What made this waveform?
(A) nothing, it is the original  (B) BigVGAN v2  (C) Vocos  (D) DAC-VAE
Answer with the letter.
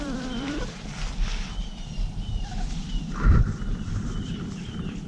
B